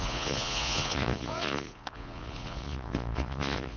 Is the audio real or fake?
fake